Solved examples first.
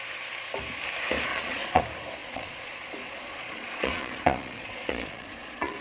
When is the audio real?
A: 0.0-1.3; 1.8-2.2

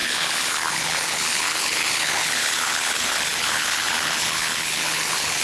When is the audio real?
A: none

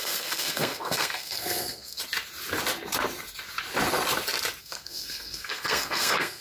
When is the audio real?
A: 2.0-4.6

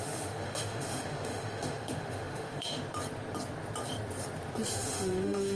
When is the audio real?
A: 2.8-4.7

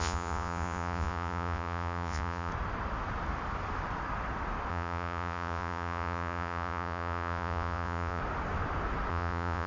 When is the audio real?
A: 2.5-4.7; 8.2-9.1

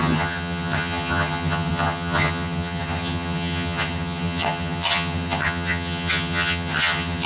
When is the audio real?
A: none

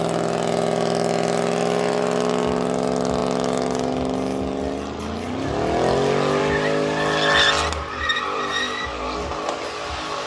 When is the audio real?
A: 0.0-10.3